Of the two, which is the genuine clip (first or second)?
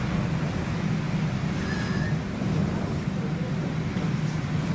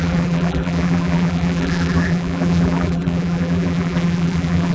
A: first